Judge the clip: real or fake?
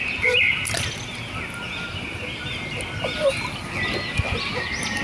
real